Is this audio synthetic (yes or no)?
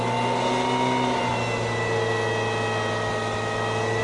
no